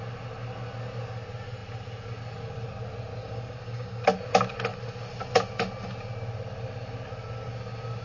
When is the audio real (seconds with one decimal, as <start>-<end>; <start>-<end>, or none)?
0.0-3.2; 4.0-8.0

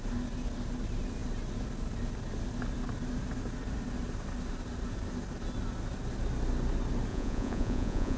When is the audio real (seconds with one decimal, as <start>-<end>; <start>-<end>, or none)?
0.0-7.1

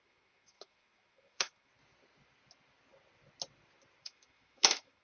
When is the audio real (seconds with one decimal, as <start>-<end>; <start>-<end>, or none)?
1.7-4.0

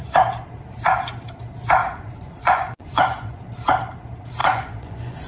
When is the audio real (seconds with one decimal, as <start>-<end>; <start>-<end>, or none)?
0.0-1.8; 3.4-4.4

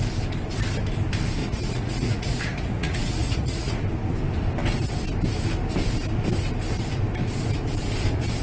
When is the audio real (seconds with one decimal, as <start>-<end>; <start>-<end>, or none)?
0.0-1.4; 3.8-8.4